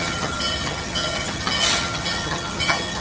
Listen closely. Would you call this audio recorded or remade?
remade